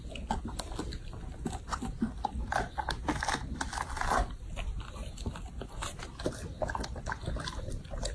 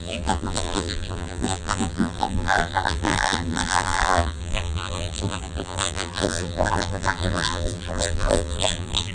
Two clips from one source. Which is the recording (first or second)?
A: first